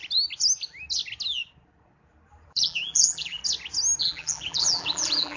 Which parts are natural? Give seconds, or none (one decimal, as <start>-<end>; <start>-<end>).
0.0-2.5; 3.4-4.0